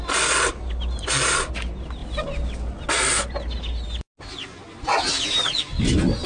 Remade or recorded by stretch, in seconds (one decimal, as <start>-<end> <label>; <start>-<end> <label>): 0.0-6.3 recorded